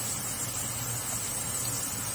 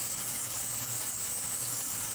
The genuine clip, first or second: first